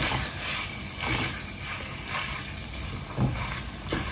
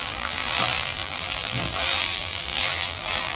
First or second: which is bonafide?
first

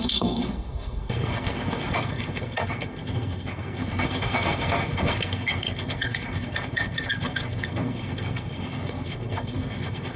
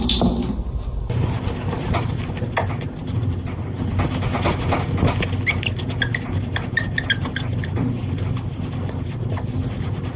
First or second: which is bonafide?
second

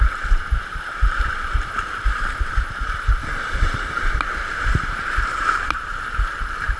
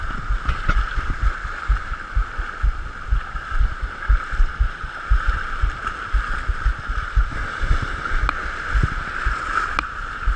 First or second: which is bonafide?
second